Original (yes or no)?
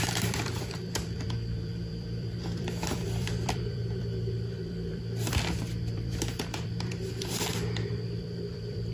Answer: no